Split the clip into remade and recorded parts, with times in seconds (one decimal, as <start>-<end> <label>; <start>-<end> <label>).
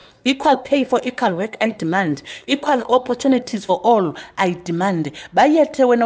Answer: 0.0-3.7 remade; 3.7-6.1 recorded